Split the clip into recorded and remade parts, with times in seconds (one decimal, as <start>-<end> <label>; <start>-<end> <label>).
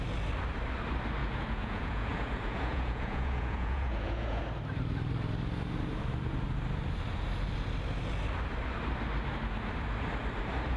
0.0-1.2 recorded; 1.2-4.4 remade; 4.4-10.8 recorded